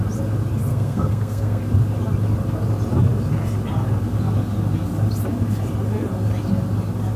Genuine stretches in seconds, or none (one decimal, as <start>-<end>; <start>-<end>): 0.0-0.7; 1.6-7.2